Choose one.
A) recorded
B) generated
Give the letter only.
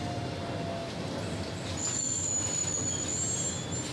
A